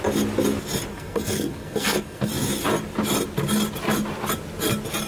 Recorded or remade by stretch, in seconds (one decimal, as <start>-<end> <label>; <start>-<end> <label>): 0.0-0.9 recorded; 0.9-2.3 remade; 2.3-5.1 recorded